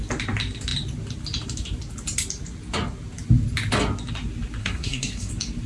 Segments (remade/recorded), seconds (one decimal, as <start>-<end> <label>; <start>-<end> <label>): 0.0-4.6 recorded; 4.6-5.3 remade; 5.3-5.7 recorded